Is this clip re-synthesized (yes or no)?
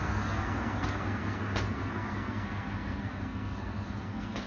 yes